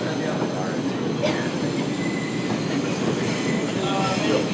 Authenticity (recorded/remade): recorded